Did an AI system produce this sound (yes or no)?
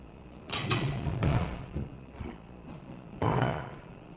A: yes